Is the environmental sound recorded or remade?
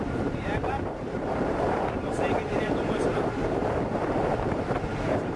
remade